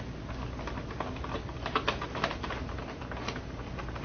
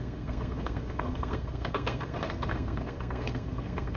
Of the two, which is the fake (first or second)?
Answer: second